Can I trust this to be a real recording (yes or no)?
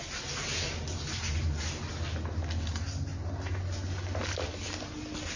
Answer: yes